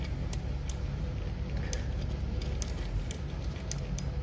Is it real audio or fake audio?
real